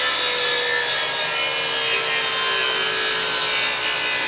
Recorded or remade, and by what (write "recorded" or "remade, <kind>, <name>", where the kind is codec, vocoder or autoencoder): recorded